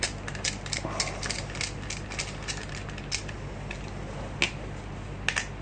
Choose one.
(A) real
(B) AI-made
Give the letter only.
A